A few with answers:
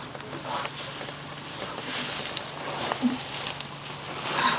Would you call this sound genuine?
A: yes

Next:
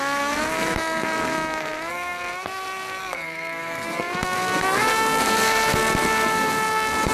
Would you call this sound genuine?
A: no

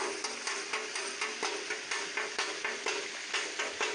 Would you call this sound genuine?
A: yes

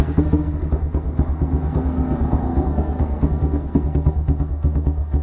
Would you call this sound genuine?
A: no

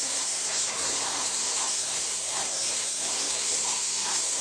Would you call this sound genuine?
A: no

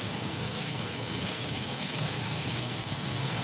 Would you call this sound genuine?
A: no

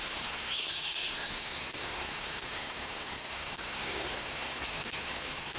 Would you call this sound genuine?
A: no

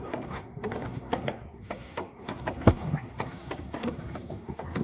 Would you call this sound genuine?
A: no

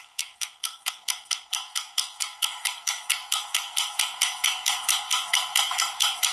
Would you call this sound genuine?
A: no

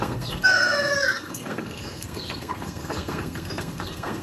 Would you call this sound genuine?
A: no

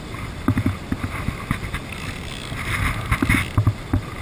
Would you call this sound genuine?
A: yes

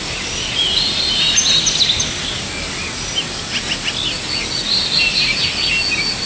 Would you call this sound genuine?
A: yes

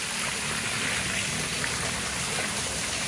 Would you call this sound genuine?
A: yes